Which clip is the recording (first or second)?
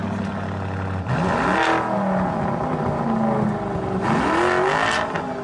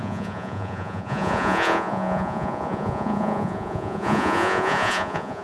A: first